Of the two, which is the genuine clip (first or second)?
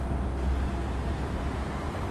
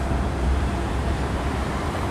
first